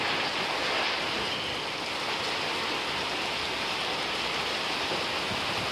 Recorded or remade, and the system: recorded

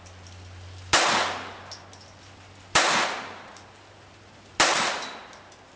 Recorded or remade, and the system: recorded